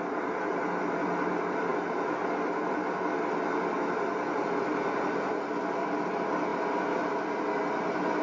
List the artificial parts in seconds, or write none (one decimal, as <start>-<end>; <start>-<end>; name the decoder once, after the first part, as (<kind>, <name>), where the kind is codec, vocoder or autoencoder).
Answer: none